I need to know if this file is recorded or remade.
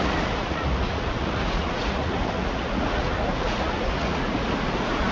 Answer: remade